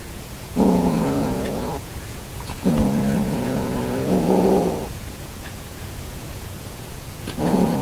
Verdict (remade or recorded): remade